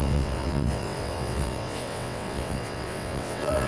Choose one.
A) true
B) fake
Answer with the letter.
B